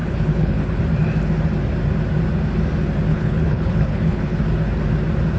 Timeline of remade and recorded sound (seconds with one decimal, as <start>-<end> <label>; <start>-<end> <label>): 0.0-0.8 remade; 0.8-3.1 recorded; 3.1-4.4 remade; 4.4-5.4 recorded